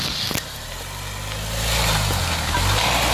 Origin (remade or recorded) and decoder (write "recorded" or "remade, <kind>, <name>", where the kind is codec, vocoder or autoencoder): recorded